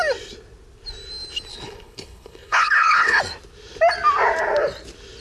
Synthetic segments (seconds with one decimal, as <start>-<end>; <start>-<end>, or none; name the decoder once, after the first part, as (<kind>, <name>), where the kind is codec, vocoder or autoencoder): 1.5-3.2 (codec, HILCodec)